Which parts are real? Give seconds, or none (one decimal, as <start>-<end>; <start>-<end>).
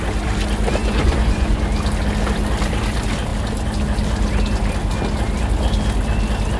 0.0-0.8; 1.6-6.6